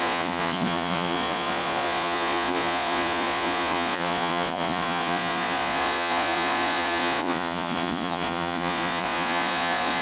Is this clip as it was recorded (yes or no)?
no